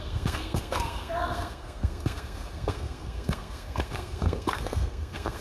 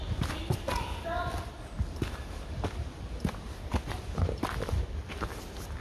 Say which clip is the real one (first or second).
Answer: second